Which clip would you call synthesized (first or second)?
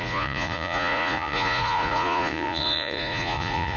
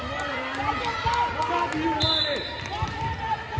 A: first